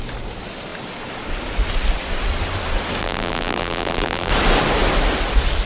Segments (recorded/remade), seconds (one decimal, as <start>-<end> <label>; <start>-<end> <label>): 0.0-3.0 recorded; 3.0-4.3 remade; 4.3-5.7 recorded